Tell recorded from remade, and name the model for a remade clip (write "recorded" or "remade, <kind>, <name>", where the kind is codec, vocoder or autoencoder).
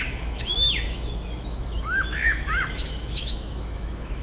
remade, autoencoder, DAC-VAE